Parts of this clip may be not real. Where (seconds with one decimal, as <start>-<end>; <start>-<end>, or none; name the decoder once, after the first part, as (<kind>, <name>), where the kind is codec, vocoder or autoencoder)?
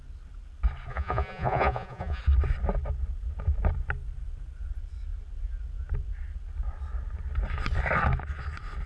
0.9-2.2 (vocoder, Vocos)